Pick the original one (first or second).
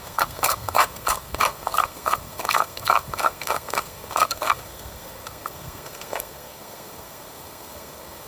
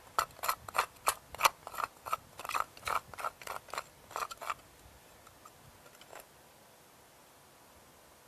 second